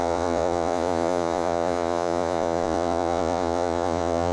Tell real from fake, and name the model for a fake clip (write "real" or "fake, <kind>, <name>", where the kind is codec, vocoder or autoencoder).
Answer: fake, vocoder, Vocos